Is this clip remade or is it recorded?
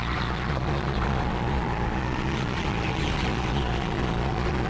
remade